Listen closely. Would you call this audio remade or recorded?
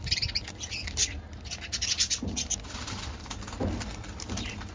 recorded